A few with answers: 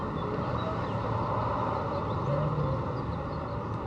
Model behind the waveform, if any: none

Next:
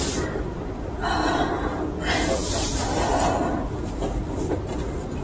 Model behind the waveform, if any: none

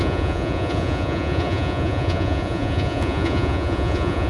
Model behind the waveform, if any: vocoder, Vocos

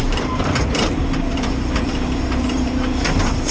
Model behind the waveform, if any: vocoder, BigVGAN v2